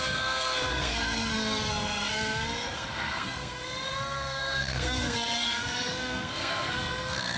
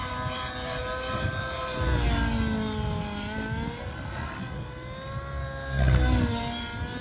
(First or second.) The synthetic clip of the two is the first